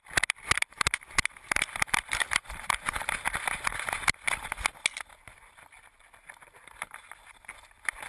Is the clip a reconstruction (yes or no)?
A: no